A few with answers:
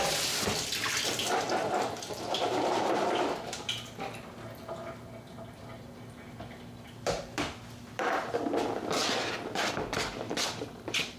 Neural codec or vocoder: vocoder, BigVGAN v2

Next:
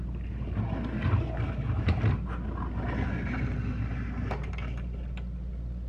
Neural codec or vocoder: none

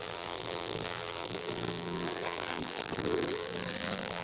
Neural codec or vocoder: vocoder, BigVGAN v2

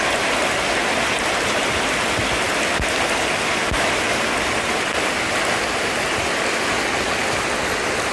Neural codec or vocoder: none